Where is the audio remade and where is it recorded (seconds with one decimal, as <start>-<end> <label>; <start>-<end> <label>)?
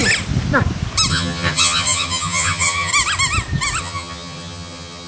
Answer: 0.0-1.1 recorded; 1.1-2.9 remade; 2.9-3.8 recorded; 3.8-5.1 remade